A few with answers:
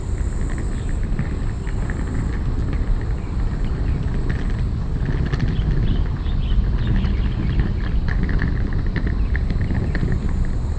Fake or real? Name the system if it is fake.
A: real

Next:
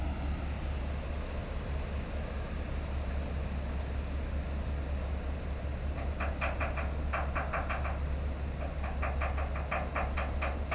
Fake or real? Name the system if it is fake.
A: real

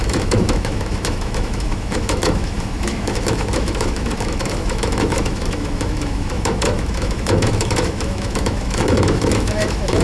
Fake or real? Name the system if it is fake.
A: fake, autoencoder, DAC-VAE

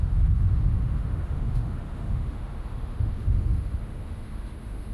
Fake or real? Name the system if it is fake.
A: fake, autoencoder, DAC-VAE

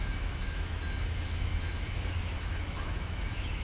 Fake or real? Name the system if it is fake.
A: fake, autoencoder, DAC-VAE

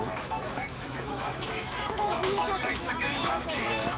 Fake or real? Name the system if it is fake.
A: fake, autoencoder, DAC-VAE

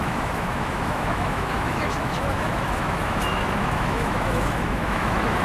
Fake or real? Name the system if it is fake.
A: fake, autoencoder, DAC-VAE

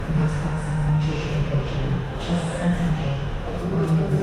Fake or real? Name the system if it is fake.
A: fake, autoencoder, DAC-VAE